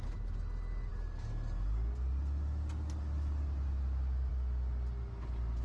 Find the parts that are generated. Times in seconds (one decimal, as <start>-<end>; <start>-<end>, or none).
none